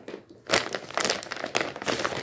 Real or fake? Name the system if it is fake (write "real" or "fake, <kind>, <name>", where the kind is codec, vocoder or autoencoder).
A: real